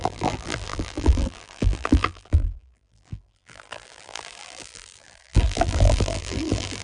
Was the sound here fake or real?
fake